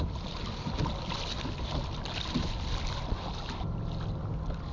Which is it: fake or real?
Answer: real